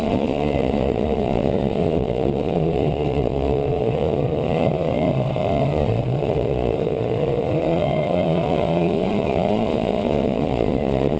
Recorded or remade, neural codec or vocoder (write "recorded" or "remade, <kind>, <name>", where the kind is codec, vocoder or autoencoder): remade, vocoder, Vocos